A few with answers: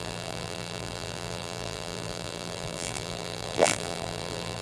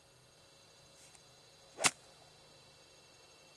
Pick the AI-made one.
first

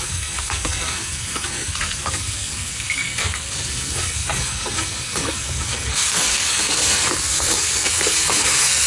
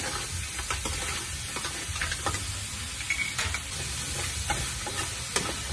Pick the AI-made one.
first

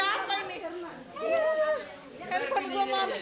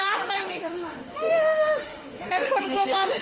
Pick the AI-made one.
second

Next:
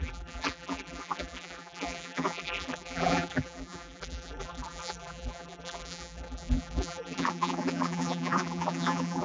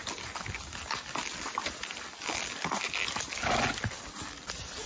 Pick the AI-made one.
first